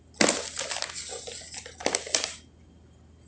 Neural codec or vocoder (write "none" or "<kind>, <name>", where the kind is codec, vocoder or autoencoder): none